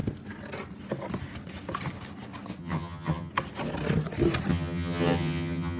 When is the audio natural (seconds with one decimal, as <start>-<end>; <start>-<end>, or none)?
0.0-2.6; 3.3-4.5